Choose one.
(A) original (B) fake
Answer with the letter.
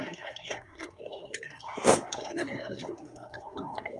B